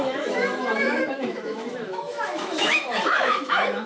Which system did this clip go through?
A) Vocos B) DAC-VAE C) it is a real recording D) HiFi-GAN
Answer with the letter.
B